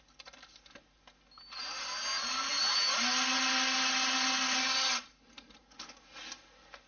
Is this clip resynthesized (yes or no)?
no